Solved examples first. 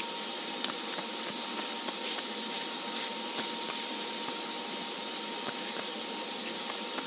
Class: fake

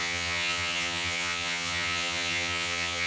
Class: fake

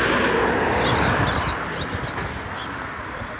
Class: real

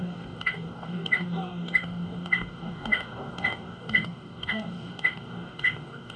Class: fake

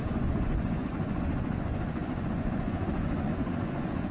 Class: fake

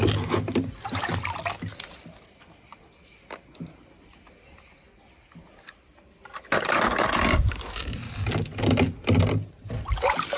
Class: real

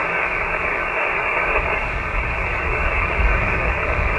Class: fake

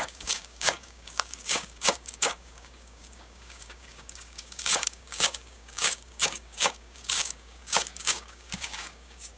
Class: fake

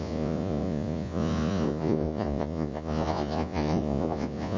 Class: fake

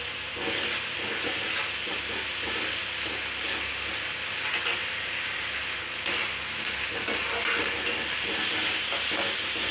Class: real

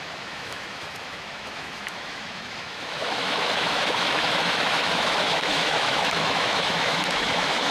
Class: fake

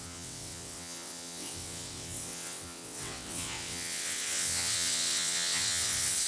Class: fake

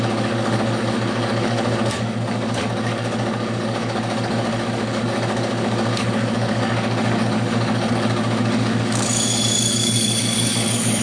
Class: fake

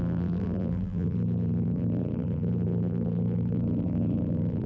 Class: fake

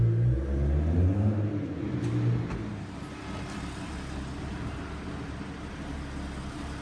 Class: real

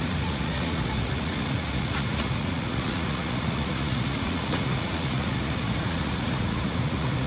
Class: fake